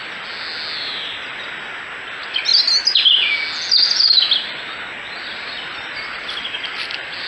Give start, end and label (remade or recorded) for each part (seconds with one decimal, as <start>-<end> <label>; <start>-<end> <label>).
0.0-7.3 recorded